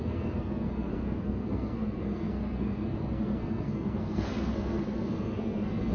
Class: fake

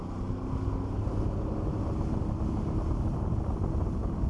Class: real